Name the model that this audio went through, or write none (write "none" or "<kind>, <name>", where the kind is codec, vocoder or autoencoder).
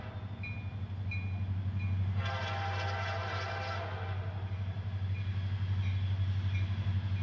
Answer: none